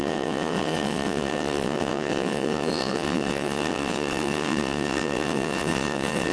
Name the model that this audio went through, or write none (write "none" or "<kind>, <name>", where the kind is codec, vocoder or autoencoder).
vocoder, WaveNeXt